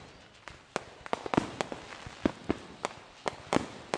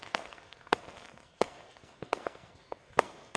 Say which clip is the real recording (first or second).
first